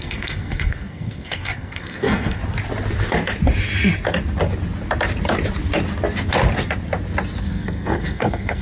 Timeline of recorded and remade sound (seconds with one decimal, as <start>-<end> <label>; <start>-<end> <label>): 0.0-2.4 remade; 2.4-7.4 recorded; 7.4-8.6 remade